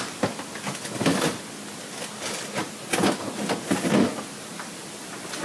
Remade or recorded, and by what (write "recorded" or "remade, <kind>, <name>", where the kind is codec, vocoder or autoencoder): recorded